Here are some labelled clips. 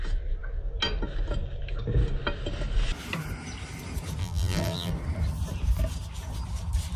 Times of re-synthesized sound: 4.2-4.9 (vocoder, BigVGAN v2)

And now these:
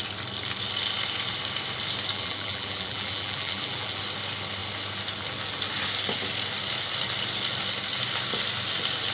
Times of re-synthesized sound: 2.1-4.0 (vocoder, BigVGAN v2)

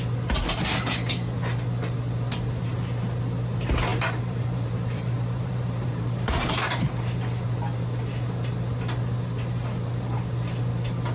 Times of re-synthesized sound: 3.9-6.9 (vocoder, BigVGAN v2)

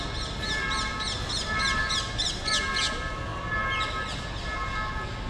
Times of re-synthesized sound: none

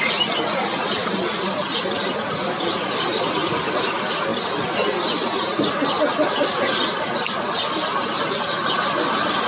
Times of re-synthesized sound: 0.0-3.4 (vocoder, BigVGAN v2); 3.9-4.3; 7.2-9.5